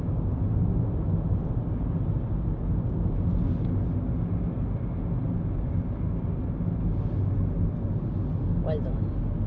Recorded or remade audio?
recorded